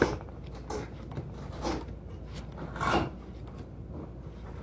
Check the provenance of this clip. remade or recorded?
recorded